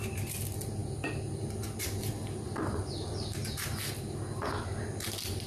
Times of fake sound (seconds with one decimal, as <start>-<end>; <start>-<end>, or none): 0.0-3.4; 4.9-5.5